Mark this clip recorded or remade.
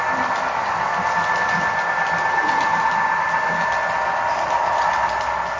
recorded